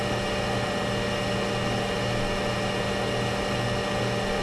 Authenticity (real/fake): real